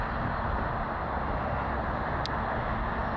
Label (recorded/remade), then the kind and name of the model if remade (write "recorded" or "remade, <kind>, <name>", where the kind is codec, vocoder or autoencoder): recorded